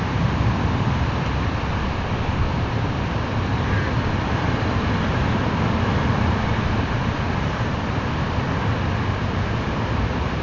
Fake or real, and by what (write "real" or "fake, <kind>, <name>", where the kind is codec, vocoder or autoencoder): real